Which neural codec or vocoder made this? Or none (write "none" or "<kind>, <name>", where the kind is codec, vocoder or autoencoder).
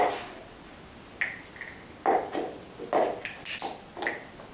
none